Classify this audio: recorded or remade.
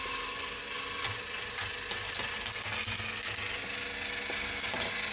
recorded